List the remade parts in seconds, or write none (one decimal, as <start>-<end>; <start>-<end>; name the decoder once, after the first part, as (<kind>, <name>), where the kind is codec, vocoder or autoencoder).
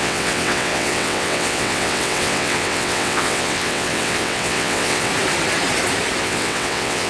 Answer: 0.0-5.1 (vocoder, WaveNeXt); 6.2-7.1